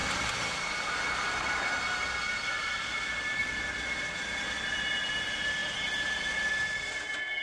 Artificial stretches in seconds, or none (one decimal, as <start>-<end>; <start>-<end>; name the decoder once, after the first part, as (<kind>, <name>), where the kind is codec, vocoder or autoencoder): none